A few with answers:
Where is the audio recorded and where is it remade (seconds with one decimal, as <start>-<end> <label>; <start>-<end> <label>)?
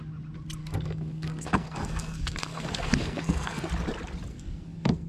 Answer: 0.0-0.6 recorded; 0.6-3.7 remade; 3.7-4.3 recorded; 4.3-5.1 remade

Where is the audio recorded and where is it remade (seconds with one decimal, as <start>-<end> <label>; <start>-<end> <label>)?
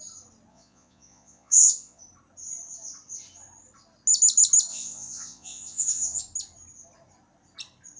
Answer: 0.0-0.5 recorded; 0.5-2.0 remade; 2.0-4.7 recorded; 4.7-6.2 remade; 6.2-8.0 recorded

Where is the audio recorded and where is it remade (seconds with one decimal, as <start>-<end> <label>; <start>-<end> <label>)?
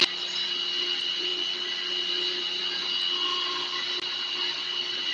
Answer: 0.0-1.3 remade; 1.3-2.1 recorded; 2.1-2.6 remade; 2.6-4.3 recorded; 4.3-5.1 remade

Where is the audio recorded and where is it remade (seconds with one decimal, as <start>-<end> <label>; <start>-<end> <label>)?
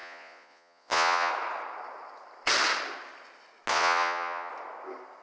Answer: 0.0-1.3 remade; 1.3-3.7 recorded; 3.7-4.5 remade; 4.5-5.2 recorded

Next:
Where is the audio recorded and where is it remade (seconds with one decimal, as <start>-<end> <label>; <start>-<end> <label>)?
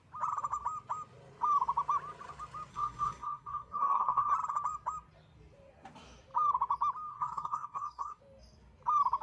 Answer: 0.0-2.7 recorded; 2.7-4.3 remade; 4.3-7.1 recorded; 7.1-8.2 remade; 8.2-9.2 recorded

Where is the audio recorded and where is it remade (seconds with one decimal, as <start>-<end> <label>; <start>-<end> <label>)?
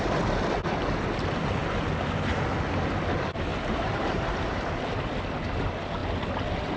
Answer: 0.0-3.5 recorded; 3.5-4.8 remade; 4.8-6.8 recorded